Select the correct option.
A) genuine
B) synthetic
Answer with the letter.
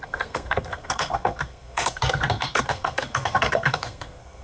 B